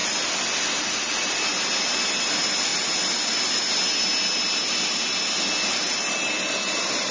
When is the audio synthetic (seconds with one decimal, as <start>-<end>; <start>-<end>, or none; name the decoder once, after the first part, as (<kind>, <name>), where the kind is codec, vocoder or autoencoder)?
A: none